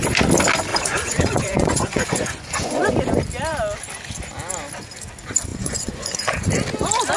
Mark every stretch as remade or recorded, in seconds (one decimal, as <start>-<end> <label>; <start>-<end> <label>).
0.0-0.7 recorded; 0.7-2.9 remade; 2.9-5.5 recorded; 5.5-6.5 remade; 6.5-7.2 recorded